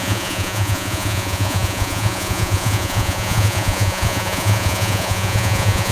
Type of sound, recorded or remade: remade